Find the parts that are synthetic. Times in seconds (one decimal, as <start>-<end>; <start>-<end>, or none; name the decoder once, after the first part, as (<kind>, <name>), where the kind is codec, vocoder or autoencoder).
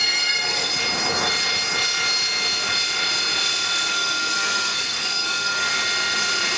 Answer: 0.0-0.7 (codec, SNAC); 3.9-5.7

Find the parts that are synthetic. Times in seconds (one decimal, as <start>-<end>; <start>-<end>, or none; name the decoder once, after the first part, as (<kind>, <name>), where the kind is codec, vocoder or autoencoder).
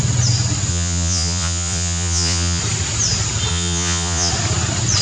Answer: 0.7-2.6 (vocoder, Vocos); 3.5-4.3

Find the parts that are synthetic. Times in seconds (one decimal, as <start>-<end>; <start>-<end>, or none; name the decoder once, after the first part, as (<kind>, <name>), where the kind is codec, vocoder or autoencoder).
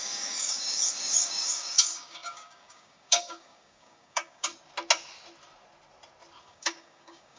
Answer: 0.0-4.5 (codec, DAC); 6.4-7.4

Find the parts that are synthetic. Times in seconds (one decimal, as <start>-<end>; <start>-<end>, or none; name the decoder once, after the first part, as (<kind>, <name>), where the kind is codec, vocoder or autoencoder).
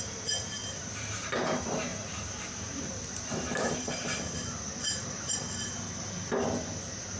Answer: 0.6-1.3 (vocoder, BigVGAN v2); 1.9-5.3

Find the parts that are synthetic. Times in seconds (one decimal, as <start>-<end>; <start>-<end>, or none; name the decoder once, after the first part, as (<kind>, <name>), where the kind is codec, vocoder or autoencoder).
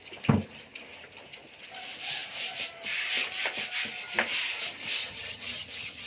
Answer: 5.0-6.1 (vocoder, HiFi-GAN)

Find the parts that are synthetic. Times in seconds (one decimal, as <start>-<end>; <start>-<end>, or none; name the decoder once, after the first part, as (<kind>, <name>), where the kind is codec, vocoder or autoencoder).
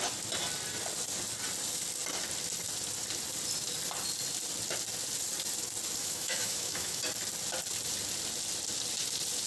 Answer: 6.0-7.0 (autoencoder, DAC-VAE)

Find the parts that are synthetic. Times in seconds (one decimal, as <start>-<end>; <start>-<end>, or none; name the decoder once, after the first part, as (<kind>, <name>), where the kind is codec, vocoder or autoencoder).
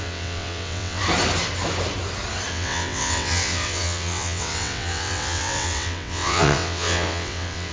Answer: 0.0-1.0 (vocoder, WaveNeXt); 2.5-7.7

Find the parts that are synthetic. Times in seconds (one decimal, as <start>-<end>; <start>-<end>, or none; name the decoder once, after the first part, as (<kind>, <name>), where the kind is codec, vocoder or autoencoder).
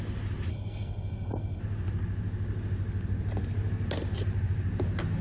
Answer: 0.5-1.6 (codec, SNAC)